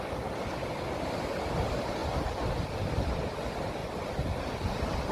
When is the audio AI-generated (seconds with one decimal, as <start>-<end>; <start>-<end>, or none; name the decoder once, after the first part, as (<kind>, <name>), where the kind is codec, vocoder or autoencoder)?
3.8-4.4 (vocoder, BigVGAN v2)